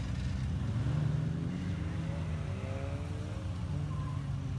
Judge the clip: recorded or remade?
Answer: recorded